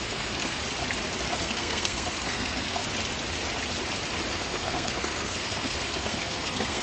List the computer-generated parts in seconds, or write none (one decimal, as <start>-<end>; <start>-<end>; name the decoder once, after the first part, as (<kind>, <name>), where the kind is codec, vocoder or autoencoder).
0.0-0.6 (codec, SNAC); 1.4-2.8; 4.3-6.8